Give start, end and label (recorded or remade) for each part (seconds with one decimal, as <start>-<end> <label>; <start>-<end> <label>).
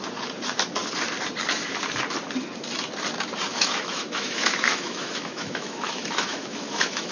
0.0-3.5 recorded; 3.5-7.1 remade